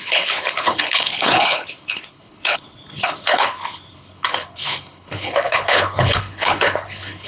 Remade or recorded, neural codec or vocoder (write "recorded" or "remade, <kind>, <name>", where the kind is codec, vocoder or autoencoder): remade, codec, HILCodec